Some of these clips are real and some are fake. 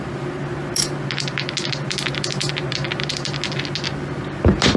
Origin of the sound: real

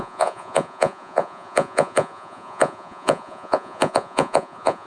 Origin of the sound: fake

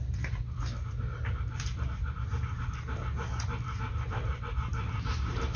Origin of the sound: real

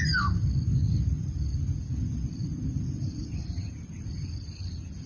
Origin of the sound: real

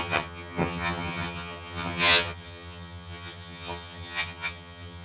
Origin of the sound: fake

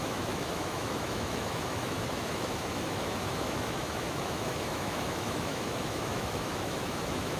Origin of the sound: fake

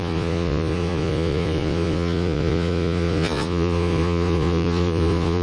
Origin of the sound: fake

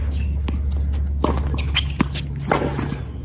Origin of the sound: real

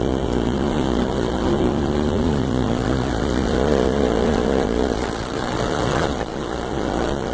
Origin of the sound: fake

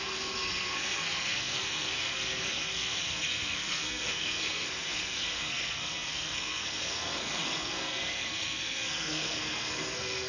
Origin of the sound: fake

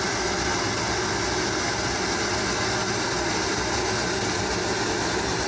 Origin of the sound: real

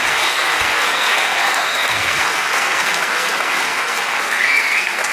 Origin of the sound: fake